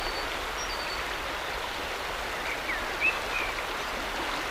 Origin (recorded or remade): recorded